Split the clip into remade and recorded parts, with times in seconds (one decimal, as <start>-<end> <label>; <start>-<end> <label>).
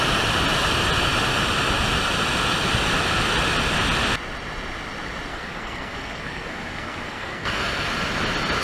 0.0-5.3 recorded; 5.3-7.9 remade; 7.9-8.6 recorded